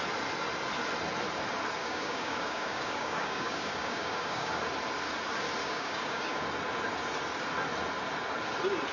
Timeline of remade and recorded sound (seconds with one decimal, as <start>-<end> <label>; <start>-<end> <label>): 0.0-1.8 recorded; 1.8-4.5 remade; 4.5-5.6 recorded; 5.6-6.4 remade; 6.4-8.9 recorded